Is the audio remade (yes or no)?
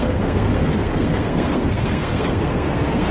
yes